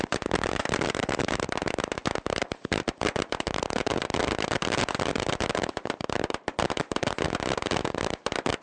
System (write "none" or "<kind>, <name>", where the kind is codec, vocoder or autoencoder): none